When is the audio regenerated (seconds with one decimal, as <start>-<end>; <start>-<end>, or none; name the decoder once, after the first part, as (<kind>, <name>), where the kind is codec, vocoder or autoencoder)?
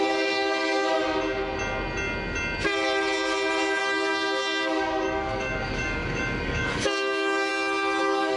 0.0-1.0 (codec, DAC); 3.8-7.5; 8.0-8.4